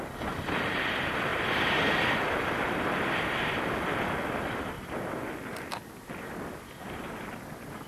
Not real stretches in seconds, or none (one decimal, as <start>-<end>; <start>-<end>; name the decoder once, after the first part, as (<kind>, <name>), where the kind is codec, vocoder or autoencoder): none